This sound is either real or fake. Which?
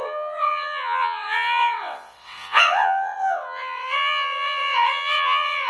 fake